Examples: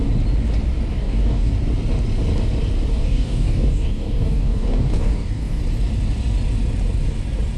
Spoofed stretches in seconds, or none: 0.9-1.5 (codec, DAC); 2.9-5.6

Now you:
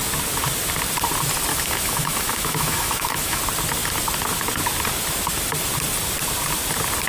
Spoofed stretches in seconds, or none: 1.5-3.4 (autoencoder, DAC-VAE)

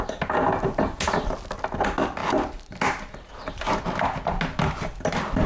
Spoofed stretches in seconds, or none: none

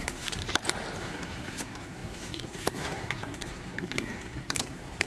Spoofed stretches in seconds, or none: 0.0-0.4 (codec, SNAC); 1.0-5.1

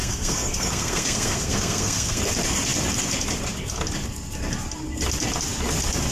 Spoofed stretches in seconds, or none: 0.0-2.2 (codec, SNAC)